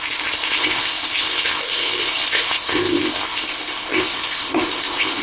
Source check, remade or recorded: remade